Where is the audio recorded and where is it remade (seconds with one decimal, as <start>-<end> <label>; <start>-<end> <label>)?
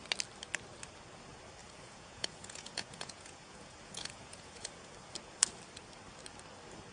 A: 0.0-1.6 recorded; 1.6-4.9 remade; 4.9-6.9 recorded